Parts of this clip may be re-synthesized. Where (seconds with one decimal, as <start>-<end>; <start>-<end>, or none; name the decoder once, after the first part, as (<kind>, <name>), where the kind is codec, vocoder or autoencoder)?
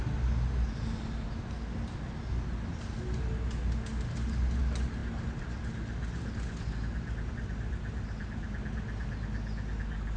none